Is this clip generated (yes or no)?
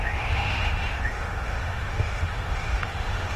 yes